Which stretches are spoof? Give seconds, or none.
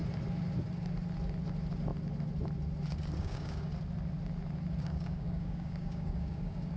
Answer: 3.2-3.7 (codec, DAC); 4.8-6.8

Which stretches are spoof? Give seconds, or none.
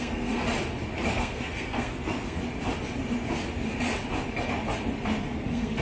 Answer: 0.0-0.4 (codec, SNAC); 1.1-2.4; 5.2-5.8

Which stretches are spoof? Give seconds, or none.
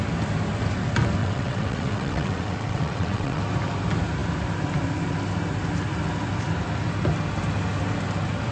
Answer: 1.2-3.4 (vocoder, WaveNeXt)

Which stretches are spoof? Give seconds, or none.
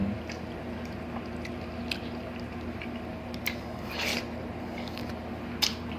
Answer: 3.6-4.1 (codec, DAC); 4.6-5.0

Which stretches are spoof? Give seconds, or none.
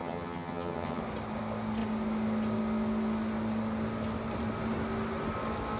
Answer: 0.0-1.0 (vocoder, HiFi-GAN)